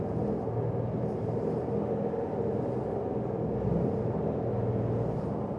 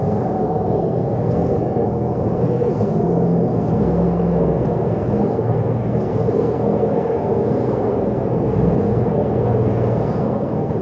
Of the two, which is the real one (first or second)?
first